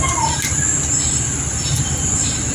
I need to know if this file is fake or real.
real